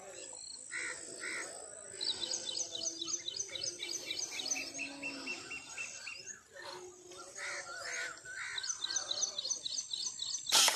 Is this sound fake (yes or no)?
no